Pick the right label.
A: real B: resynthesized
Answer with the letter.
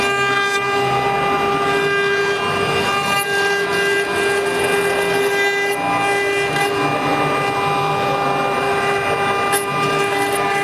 A